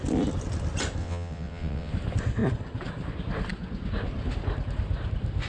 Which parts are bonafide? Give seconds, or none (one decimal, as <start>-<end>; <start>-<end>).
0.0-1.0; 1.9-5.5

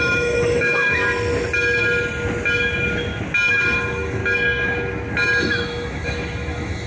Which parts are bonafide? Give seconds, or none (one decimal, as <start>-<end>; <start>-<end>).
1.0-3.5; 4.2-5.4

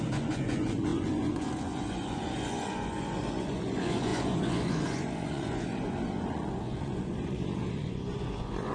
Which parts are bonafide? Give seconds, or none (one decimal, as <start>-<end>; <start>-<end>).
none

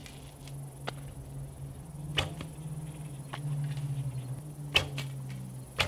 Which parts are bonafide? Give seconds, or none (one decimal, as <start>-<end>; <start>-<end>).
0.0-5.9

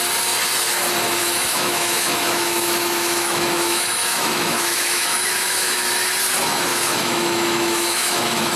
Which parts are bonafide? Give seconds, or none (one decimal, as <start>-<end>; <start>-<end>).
0.0-1.2; 5.9-6.7

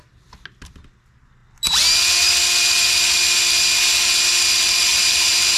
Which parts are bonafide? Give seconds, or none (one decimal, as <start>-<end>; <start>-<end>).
0.0-4.9

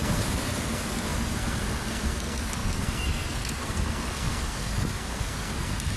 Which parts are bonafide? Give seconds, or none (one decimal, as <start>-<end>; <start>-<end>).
none